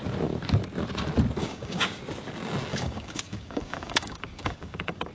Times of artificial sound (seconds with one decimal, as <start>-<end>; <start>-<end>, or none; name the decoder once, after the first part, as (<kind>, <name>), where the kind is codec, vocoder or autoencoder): 1.4-2.0 (codec, DAC); 2.7-5.1